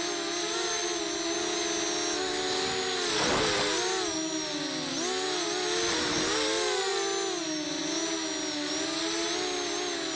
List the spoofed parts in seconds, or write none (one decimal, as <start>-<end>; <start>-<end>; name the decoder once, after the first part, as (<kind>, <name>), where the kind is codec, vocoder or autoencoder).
none